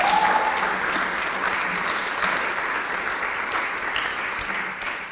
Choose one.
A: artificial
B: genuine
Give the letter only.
B